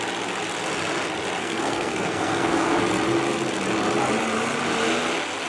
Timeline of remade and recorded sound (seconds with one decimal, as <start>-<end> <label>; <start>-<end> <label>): 0.0-1.4 recorded; 1.4-2.8 remade; 2.8-5.5 recorded